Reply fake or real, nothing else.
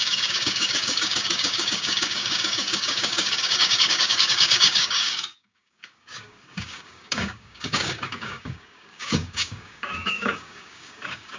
fake